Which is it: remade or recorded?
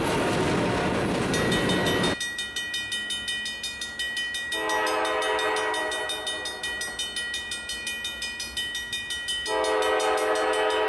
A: recorded